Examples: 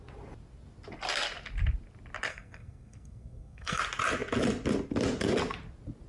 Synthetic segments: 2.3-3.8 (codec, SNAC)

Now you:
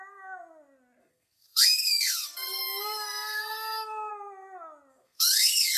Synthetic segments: 1.0-4.1 (codec, SNAC); 4.9-5.8

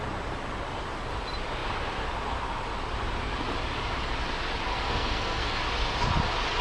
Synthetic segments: 4.7-5.6 (codec, SNAC)

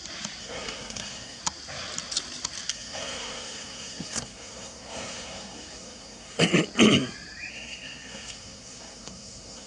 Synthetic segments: 0.4-1.4 (codec, SNAC); 2.7-6.5; 7.5-9.7

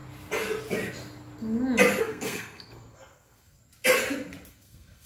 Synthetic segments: 2.0-3.6 (codec, SNAC); 4.5-5.1

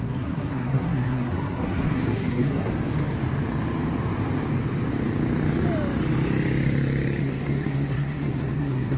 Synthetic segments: 0.0-2.7 (codec, SNAC); 7.2-9.0

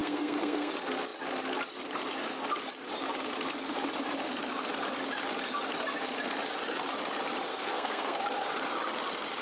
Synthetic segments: 0.0-0.7 (codec, SNAC); 7.5-8.2

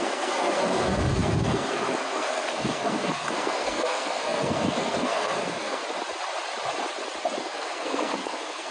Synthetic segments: 0.0-5.8 (codec, SNAC); 7.4-8.7